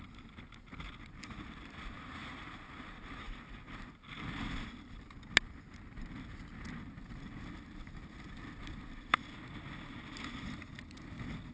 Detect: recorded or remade recorded